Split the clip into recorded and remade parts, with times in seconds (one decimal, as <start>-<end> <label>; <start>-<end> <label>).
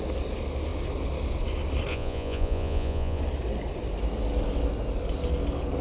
0.0-1.9 recorded; 1.9-3.2 remade; 3.2-5.8 recorded